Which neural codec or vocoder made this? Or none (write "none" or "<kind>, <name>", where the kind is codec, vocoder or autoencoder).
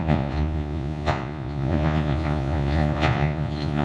vocoder, Vocos